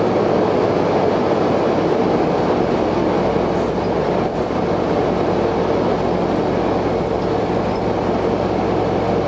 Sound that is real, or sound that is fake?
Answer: real